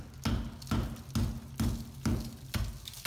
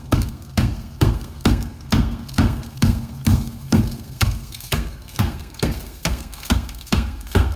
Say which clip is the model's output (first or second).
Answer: second